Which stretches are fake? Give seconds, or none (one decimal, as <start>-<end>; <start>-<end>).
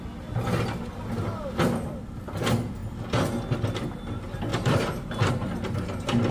4.5-5.3